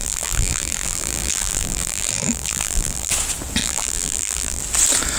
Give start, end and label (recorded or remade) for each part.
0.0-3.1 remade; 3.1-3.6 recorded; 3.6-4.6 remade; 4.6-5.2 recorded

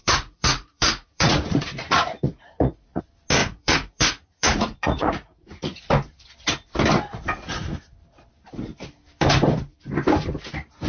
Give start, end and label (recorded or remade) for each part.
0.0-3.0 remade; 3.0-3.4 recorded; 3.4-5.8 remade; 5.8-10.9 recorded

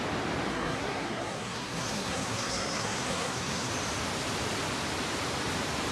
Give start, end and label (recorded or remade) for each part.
0.0-0.5 recorded; 0.5-3.7 remade; 3.7-5.9 recorded

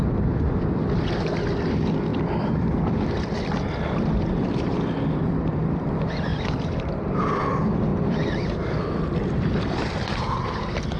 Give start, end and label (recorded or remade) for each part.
0.0-2.1 recorded; 2.1-5.3 remade; 5.3-6.3 recorded; 6.3-7.5 remade; 7.5-7.9 recorded; 7.9-10.6 remade; 10.6-11.0 recorded

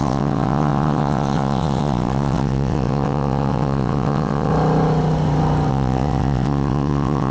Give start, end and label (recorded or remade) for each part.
0.0-4.5 remade; 4.5-5.7 recorded; 5.7-7.3 remade

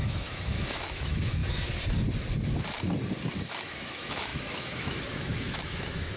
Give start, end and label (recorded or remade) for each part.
0.0-1.4 remade; 1.4-3.5 recorded; 3.5-6.2 remade

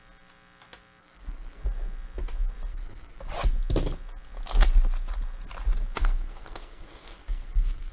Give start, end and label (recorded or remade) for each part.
0.0-1.0 recorded; 1.0-1.6 remade; 1.6-2.7 recorded; 2.7-3.2 remade; 3.2-6.0 recorded; 6.0-7.9 remade

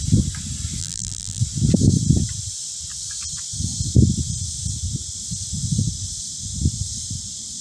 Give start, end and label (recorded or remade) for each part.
0.0-0.8 recorded; 0.8-1.4 remade; 1.4-7.6 recorded